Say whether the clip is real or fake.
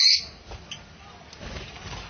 real